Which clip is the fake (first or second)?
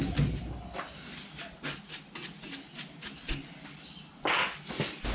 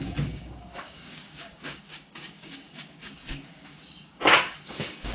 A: second